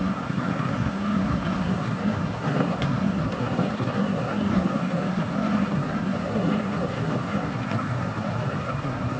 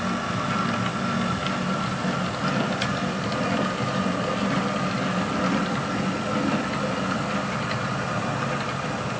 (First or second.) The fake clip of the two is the first